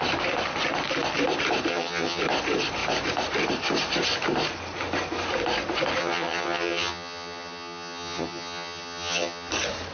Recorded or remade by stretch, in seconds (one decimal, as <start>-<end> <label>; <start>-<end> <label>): 0.0-1.7 recorded; 1.7-2.2 remade; 2.2-6.0 recorded; 6.0-9.5 remade; 9.5-9.9 recorded